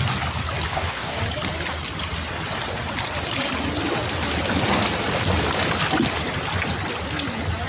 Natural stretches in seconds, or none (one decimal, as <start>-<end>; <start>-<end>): 0.0-0.7; 1.2-7.7